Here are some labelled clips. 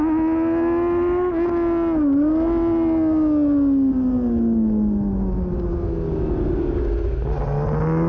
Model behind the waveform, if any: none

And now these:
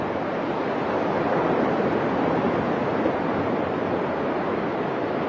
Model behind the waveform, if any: none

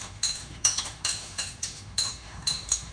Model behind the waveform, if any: autoencoder, DAC-VAE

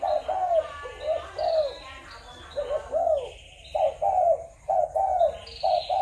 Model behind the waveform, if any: none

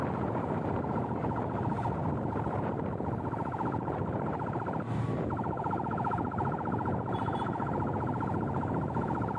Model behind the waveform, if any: none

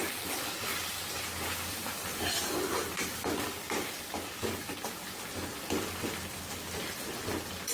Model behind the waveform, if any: none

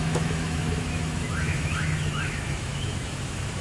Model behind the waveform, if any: autoencoder, DAC-VAE